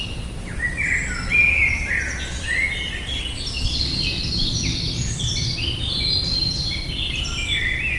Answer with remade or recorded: recorded